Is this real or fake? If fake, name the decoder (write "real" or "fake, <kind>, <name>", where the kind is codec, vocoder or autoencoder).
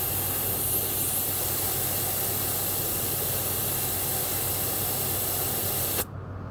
real